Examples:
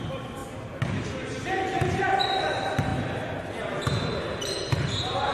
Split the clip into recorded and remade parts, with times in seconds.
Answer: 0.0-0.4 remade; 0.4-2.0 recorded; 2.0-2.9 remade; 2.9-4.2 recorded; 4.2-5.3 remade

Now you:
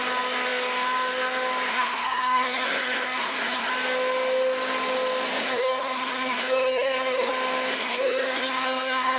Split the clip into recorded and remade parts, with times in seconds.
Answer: 0.0-1.7 recorded; 1.7-3.7 remade; 3.7-5.4 recorded; 5.4-7.3 remade; 7.3-7.7 recorded; 7.7-9.2 remade

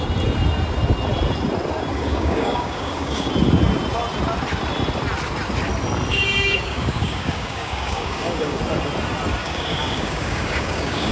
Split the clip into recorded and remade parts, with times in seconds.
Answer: 0.0-1.9 recorded; 1.9-3.3 remade; 3.3-6.1 recorded; 6.1-8.6 remade; 8.6-9.4 recorded; 9.4-11.1 remade